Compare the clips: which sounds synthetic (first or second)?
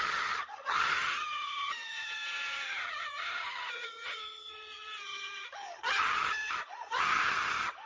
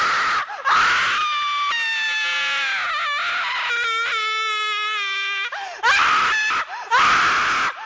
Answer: first